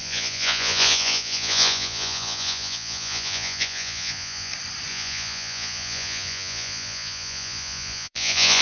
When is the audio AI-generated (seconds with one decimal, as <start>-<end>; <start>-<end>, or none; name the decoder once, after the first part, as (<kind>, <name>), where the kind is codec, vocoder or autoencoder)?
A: 0.0-4.5 (vocoder, Vocos); 4.9-8.6